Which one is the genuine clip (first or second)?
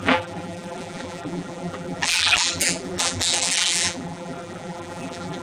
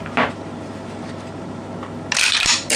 second